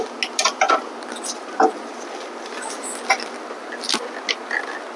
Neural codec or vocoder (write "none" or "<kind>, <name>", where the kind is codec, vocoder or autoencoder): none